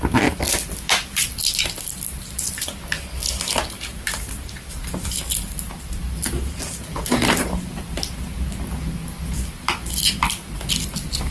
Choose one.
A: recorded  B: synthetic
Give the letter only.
A